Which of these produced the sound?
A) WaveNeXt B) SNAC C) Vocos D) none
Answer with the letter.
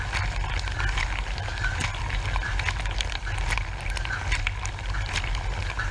D